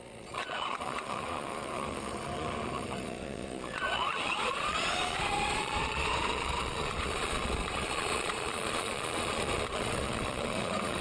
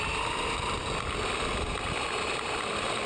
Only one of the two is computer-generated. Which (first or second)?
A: first